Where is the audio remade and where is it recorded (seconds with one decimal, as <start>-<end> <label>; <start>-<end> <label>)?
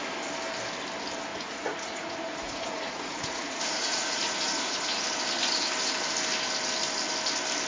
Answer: 0.0-1.3 recorded; 1.3-5.0 remade; 5.0-7.7 recorded